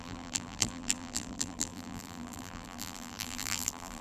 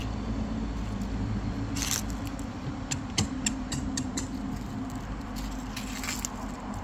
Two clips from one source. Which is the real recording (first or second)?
second